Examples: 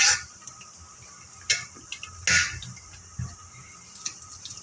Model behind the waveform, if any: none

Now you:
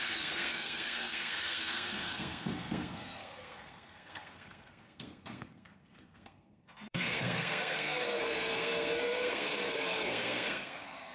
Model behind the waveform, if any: codec, SNAC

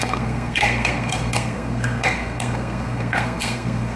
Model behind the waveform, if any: codec, SNAC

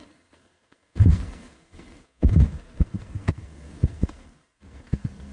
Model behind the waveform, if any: codec, SNAC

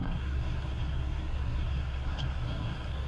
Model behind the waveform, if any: codec, SNAC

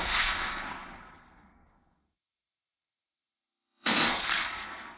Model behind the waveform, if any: codec, SNAC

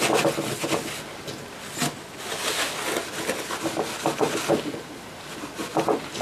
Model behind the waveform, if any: none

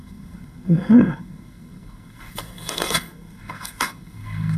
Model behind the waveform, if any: codec, SNAC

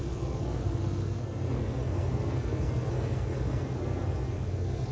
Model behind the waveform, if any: codec, SNAC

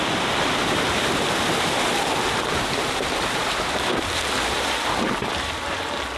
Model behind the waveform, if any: none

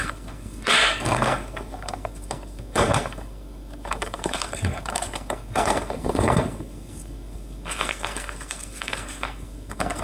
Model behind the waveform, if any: codec, SNAC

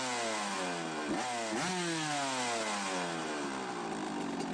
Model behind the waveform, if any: none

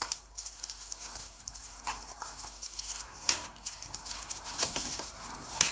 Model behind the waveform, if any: codec, SNAC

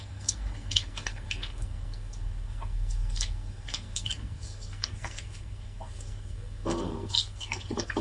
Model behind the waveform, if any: codec, SNAC